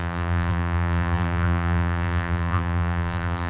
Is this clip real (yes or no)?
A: no